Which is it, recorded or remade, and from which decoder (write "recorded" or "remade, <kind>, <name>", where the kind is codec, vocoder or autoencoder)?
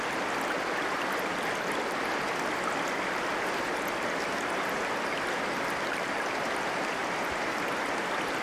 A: recorded